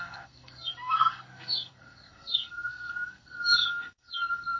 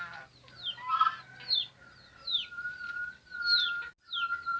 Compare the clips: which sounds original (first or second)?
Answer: second